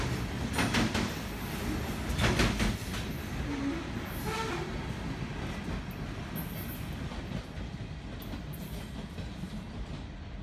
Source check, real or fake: real